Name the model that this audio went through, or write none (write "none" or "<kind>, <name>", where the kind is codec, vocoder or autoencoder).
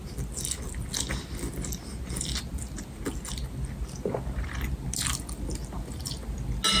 none